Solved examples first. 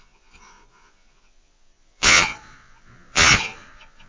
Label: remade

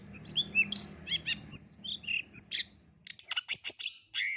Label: recorded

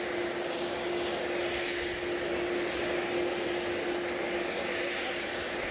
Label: recorded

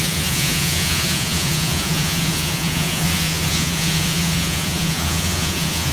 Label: remade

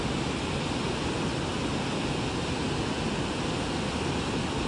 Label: recorded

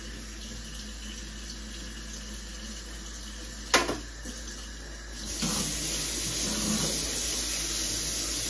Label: recorded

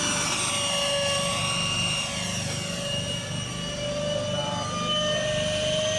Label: recorded